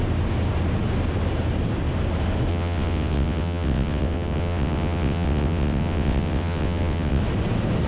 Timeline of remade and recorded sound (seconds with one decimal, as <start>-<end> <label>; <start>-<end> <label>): 0.0-2.5 recorded; 2.5-7.2 remade; 7.2-7.9 recorded